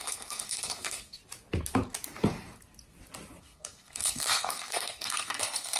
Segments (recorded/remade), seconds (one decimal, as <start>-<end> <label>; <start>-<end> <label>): 0.0-1.2 remade; 1.2-3.4 recorded; 3.4-5.8 remade

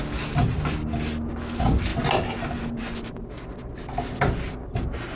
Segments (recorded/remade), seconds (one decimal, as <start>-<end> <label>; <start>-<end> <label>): 0.0-5.2 recorded

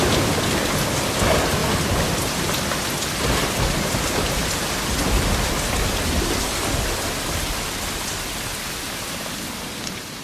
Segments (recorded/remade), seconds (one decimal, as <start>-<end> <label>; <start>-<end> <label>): 0.0-10.2 recorded

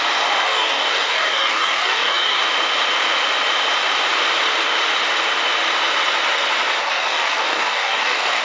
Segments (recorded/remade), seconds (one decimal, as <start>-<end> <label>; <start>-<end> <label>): 0.0-0.4 recorded; 0.4-2.4 remade; 2.4-6.8 recorded; 6.8-8.4 remade

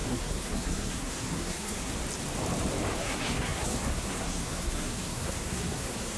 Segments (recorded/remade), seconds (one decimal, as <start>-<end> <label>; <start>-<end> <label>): 0.0-1.9 remade; 1.9-3.0 recorded; 3.0-6.2 remade

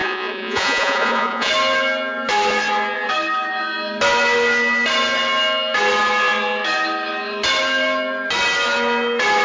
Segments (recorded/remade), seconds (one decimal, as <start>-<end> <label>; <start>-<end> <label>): 0.0-1.5 remade; 1.5-9.4 recorded

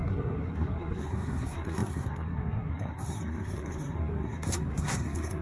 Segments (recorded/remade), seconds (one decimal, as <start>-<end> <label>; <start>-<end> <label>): 0.0-5.4 remade

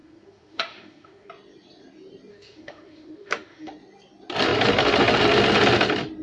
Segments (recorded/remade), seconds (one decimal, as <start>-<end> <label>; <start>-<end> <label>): 0.0-1.3 remade; 1.3-2.3 recorded; 2.3-3.7 remade; 3.7-6.2 recorded